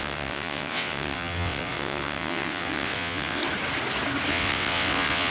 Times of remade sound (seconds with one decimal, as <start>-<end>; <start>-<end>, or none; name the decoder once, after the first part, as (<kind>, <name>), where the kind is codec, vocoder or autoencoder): 0.0-3.4 (vocoder, WaveNeXt); 4.3-5.3